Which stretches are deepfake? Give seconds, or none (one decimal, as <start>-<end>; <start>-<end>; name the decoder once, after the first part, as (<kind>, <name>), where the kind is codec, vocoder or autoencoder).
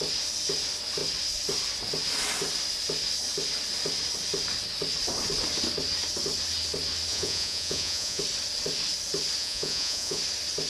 7.1-8.2 (vocoder, Vocos); 9.4-10.2